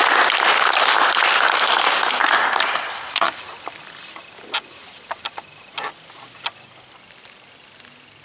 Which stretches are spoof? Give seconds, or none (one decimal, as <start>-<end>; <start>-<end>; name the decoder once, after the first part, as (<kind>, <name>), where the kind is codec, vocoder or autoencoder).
2.2-3.3 (vocoder, BigVGAN v2)